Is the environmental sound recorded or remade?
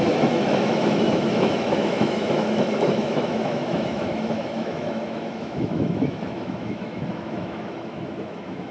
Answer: remade